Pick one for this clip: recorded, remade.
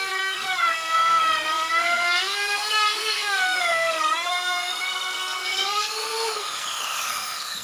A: remade